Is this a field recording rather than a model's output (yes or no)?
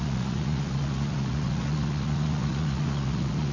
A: no